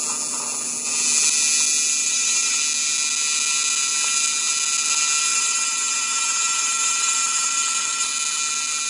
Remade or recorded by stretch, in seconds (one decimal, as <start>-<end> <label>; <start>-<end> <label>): 0.0-2.0 recorded; 2.0-2.6 remade; 2.6-5.3 recorded; 5.3-8.1 remade; 8.1-8.9 recorded